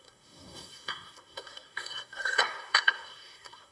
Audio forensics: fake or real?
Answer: fake